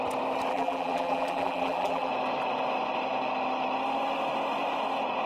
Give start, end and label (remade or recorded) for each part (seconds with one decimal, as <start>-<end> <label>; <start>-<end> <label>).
0.0-0.5 recorded; 0.5-2.1 remade; 2.1-5.3 recorded